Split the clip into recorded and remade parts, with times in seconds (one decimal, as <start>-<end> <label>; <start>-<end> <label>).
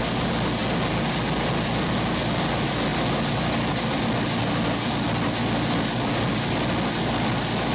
0.0-7.7 recorded